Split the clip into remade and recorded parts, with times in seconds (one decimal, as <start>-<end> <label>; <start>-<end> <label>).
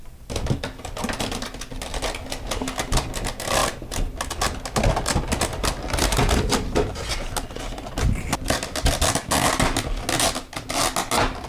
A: 0.0-11.5 recorded